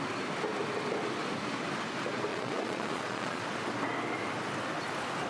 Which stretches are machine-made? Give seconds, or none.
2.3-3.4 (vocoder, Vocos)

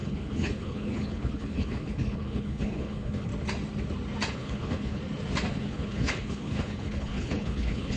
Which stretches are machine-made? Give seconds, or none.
0.0-3.3 (codec, HILCodec); 4.3-5.0; 5.5-8.0

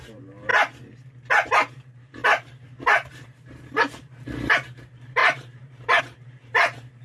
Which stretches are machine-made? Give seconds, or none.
0.0-0.5 (vocoder, BigVGAN v2); 1.5-2.2; 3.2-7.0

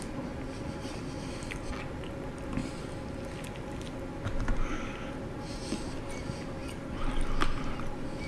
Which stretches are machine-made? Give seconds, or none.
none

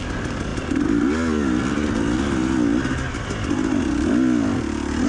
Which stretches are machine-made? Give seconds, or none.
none

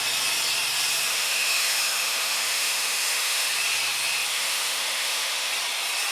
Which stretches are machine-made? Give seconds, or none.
1.1-3.5 (autoencoder, DAC-VAE); 4.3-5.5

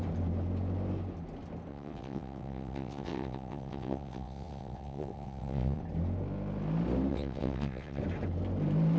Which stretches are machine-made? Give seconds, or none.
1.7-5.8 (vocoder, WaveNeXt); 7.1-8.0

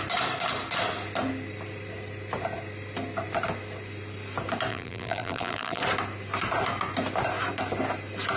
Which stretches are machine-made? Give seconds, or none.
4.7-5.8 (vocoder, BigVGAN v2)